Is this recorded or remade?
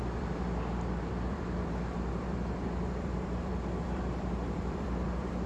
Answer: remade